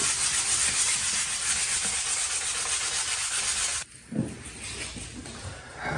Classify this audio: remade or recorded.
recorded